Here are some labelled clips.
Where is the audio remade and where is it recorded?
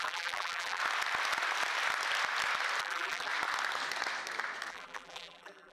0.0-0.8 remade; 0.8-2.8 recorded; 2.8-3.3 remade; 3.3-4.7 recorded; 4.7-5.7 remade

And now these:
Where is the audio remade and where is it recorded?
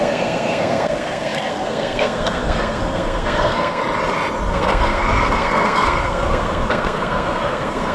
0.0-3.8 remade; 3.8-4.5 recorded; 4.5-7.9 remade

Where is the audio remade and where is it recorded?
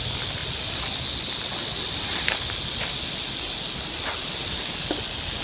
0.0-5.4 recorded